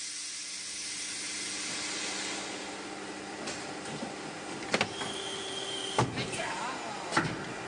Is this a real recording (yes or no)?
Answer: yes